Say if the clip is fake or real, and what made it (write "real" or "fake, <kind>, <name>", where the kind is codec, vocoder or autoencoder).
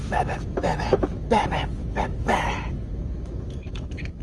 fake, autoencoder, DAC-VAE